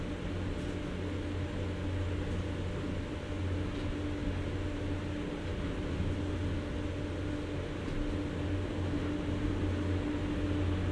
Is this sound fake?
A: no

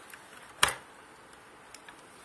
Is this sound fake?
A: no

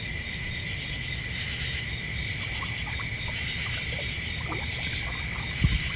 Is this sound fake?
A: no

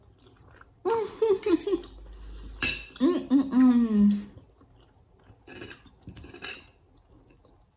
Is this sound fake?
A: no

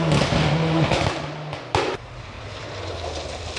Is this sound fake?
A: no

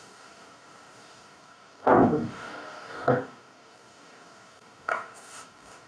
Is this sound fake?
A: yes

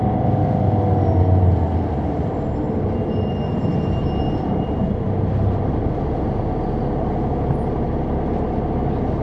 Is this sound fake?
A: no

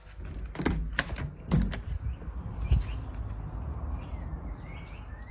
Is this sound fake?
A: no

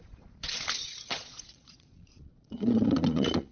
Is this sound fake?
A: yes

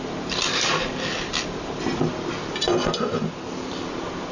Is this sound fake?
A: no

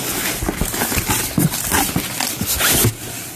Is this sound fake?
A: no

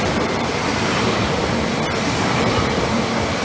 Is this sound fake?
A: yes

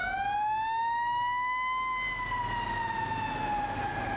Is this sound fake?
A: no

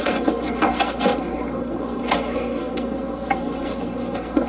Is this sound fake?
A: yes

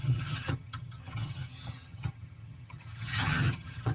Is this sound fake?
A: yes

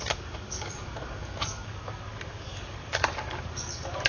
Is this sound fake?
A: yes